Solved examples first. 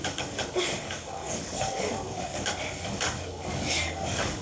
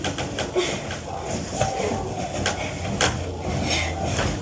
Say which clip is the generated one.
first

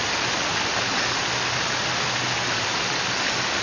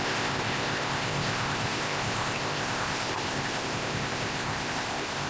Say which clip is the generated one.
second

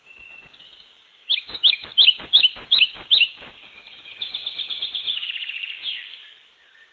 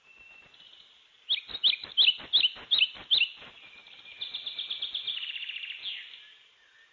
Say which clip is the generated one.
first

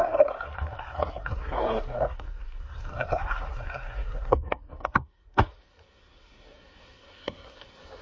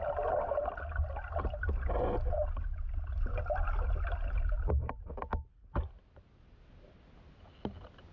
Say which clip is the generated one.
first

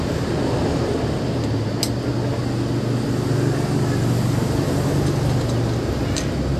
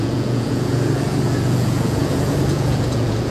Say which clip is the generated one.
second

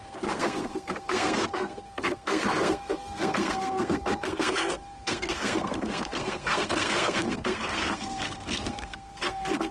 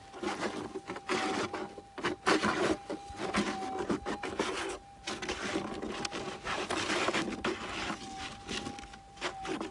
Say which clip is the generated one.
first